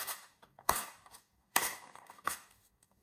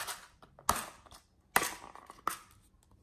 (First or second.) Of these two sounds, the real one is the second